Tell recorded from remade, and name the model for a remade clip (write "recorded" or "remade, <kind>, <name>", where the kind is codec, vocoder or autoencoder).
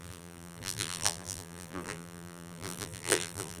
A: remade, vocoder, BigVGAN v2